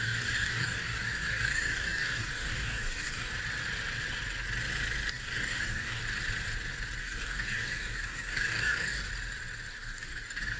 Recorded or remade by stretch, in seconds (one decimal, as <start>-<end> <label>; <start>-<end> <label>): 0.0-3.3 remade; 3.3-5.1 recorded; 5.1-6.0 remade; 6.0-7.0 recorded; 7.0-9.1 remade; 9.1-9.7 recorded; 9.7-10.6 remade